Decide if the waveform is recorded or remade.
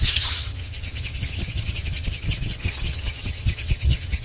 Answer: remade